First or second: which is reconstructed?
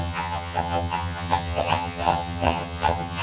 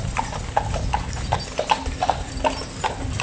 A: first